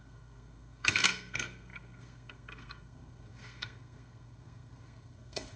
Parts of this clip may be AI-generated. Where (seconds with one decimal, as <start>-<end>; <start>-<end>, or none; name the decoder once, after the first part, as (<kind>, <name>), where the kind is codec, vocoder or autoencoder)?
0.0-5.6 (codec, SNAC)